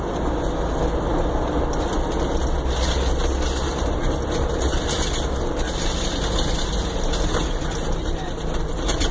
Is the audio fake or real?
real